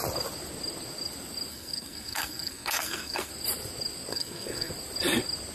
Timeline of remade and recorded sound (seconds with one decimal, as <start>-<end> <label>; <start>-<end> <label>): 0.0-1.5 recorded; 1.5-3.3 remade; 3.3-4.1 recorded; 4.1-4.7 remade; 4.7-5.5 recorded